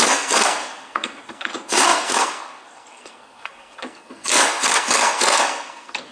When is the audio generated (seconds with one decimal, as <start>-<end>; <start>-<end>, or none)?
0.0-6.1